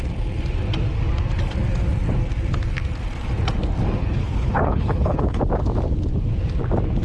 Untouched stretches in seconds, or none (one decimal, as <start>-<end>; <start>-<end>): 0.0-4.0; 5.4-7.0